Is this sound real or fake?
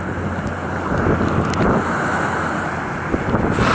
real